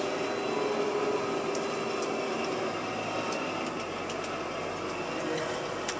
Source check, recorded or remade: recorded